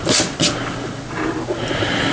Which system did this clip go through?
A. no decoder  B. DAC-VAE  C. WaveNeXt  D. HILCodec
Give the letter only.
A